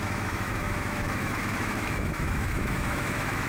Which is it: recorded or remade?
remade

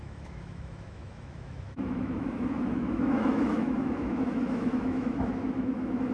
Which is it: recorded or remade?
remade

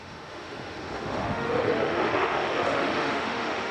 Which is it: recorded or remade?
remade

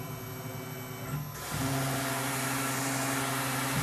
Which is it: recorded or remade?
recorded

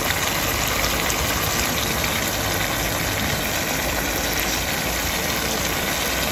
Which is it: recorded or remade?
recorded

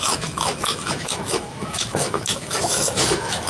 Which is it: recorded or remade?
remade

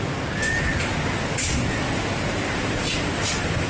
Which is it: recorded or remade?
recorded